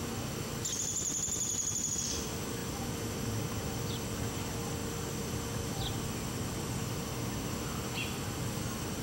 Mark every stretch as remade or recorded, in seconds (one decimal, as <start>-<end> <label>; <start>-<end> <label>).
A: 0.0-9.0 recorded